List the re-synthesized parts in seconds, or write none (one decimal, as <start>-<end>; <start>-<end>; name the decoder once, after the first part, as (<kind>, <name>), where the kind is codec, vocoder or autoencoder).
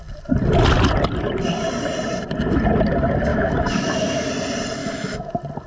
3.3-4.3 (autoencoder, DAC-VAE); 4.8-5.3